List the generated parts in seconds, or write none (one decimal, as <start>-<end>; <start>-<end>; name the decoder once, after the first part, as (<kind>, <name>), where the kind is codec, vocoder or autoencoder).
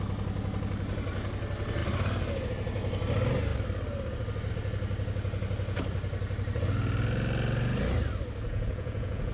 8.5-9.3 (vocoder, Vocos)